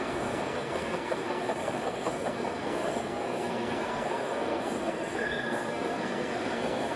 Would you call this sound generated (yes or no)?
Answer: yes